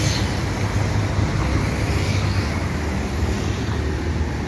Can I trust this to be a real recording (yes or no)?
yes